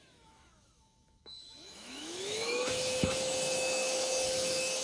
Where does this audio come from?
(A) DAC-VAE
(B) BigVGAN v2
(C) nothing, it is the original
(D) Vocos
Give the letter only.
A